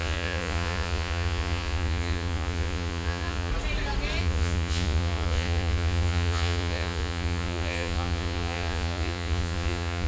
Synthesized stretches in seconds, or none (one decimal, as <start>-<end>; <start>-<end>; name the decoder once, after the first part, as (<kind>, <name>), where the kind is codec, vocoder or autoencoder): 0.0-3.5 (vocoder, Vocos); 4.2-10.1